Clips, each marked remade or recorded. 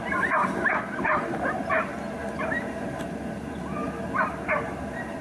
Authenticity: recorded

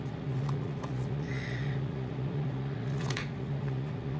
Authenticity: remade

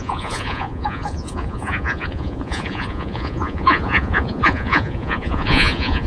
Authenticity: remade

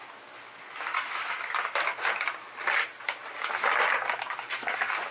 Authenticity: recorded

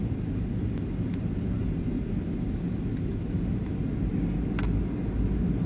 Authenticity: recorded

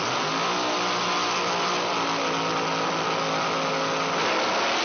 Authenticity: recorded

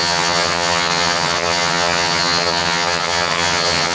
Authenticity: remade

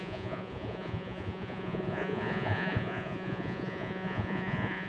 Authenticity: remade